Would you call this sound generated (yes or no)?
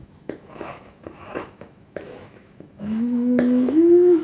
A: yes